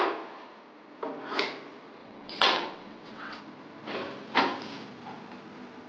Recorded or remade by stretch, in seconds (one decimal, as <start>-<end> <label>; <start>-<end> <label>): 0.0-2.0 recorded; 2.0-3.4 remade; 3.4-5.9 recorded